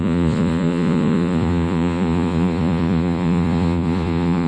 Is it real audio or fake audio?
fake